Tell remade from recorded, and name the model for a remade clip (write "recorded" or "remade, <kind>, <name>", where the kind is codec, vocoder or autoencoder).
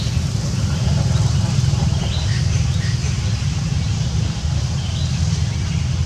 recorded